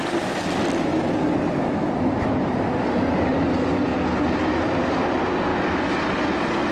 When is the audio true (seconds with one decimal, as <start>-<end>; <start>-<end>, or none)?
0.9-1.8; 3.9-4.5; 5.5-6.3